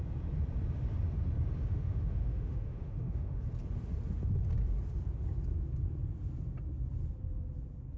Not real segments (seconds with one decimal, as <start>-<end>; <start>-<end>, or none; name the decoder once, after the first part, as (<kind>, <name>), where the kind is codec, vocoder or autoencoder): 1.6-3.4 (autoencoder, DAC-VAE)